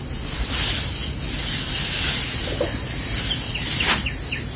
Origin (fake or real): real